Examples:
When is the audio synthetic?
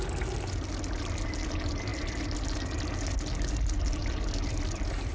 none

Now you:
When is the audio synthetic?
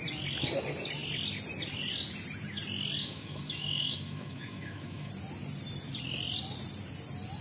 3.0-5.1 (autoencoder, DAC-VAE)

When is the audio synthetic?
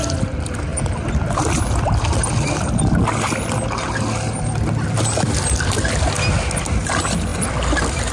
none